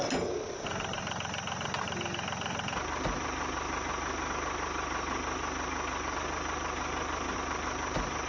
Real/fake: real